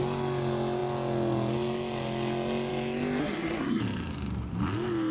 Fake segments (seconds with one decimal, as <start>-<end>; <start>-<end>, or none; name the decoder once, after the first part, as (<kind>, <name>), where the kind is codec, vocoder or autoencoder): 3.2-3.8 (codec, SNAC)